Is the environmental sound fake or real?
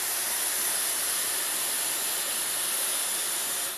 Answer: real